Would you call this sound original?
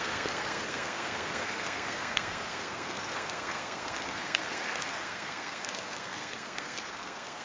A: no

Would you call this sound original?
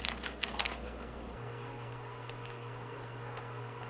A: no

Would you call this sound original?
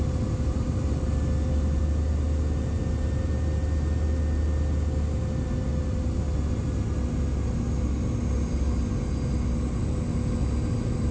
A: yes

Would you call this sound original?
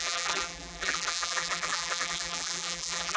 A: no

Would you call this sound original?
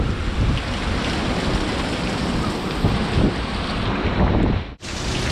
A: yes